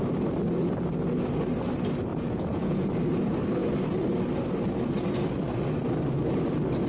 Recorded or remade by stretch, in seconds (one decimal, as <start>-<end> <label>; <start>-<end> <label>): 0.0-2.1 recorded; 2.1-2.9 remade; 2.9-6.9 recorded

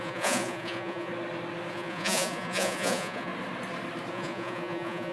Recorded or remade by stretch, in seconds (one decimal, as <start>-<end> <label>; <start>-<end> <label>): 0.0-1.1 remade; 1.1-1.7 recorded; 1.7-3.3 remade; 3.3-4.1 recorded; 4.1-5.1 remade

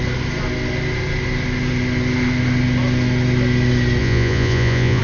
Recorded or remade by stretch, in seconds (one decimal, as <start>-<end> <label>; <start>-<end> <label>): 0.0-4.0 recorded; 4.0-5.0 remade

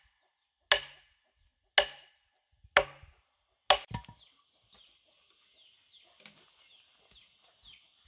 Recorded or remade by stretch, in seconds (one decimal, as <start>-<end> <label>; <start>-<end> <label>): 0.0-8.1 recorded

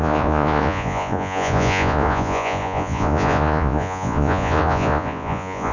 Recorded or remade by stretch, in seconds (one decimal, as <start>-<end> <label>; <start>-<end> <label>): 0.0-5.7 remade

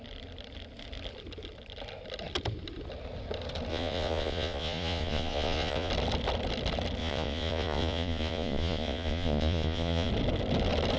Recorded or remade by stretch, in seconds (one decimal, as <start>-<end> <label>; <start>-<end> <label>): 0.0-3.7 recorded; 3.7-5.9 remade; 5.9-7.0 recorded; 7.0-10.1 remade; 10.1-11.0 recorded